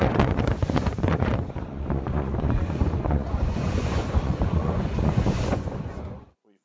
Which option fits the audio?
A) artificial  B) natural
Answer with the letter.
A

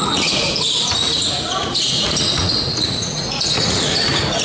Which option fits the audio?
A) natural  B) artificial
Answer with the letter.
B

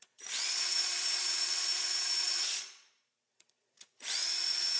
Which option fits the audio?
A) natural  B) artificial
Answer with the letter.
B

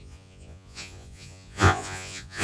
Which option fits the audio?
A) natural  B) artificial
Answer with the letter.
B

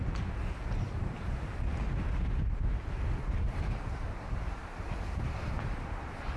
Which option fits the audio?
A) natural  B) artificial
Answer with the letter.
A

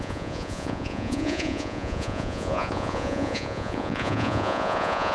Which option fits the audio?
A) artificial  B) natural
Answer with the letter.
A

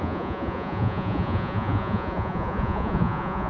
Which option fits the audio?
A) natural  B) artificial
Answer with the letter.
B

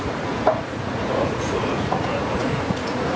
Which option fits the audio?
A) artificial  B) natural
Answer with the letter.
A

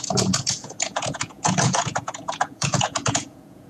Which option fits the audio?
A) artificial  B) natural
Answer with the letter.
A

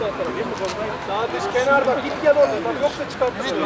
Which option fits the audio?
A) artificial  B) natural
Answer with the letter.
B